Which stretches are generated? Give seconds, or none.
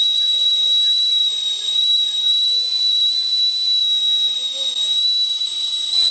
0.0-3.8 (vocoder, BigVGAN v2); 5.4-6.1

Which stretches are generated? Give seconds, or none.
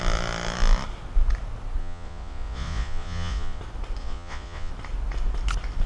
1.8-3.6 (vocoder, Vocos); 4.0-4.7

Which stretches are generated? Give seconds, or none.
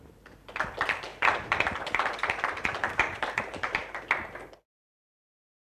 1.1-4.0 (vocoder, BigVGAN v2)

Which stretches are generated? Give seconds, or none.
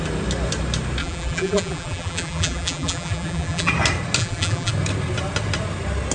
1.0-3.7 (vocoder, BigVGAN v2); 4.2-4.7